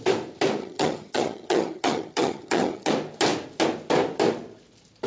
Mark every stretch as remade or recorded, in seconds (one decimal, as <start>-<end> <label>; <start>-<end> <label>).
0.0-0.6 recorded; 0.6-2.9 remade; 2.9-5.1 recorded